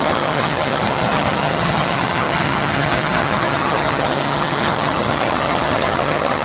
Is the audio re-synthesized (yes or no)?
yes